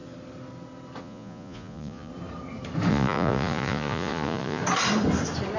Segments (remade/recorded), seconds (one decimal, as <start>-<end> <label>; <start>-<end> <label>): 0.0-1.0 recorded; 1.0-2.1 remade; 2.1-2.9 recorded; 2.9-4.6 remade; 4.6-5.6 recorded